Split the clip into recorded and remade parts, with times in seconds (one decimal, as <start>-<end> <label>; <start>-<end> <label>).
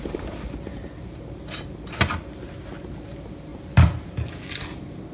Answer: 0.0-5.1 recorded